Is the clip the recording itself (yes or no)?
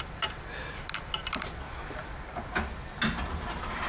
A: yes